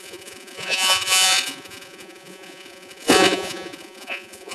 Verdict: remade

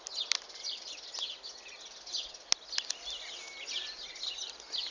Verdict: recorded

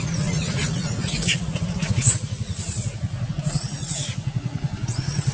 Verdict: remade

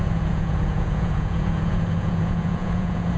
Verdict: remade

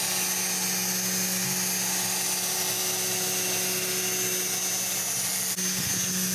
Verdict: recorded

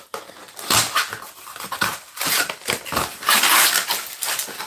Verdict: recorded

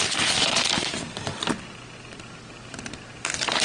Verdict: recorded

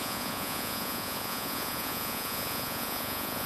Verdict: remade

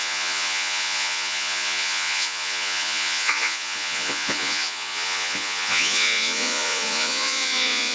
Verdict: remade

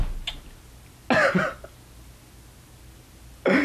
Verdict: recorded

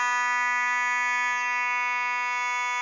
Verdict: recorded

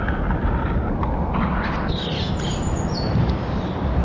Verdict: recorded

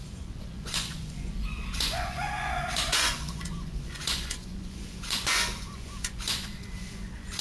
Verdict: remade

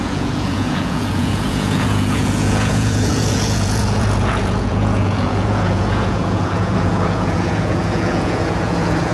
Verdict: remade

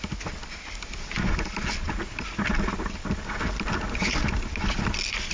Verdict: recorded